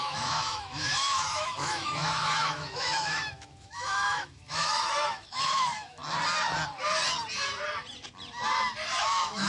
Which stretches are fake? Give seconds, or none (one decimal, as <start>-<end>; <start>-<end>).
0.0-6.0; 9.0-9.5